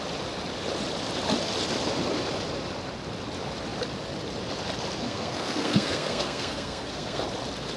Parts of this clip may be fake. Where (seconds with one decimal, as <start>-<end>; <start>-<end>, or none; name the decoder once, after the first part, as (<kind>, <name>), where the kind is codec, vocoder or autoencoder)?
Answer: 5.0-7.2 (codec, SNAC)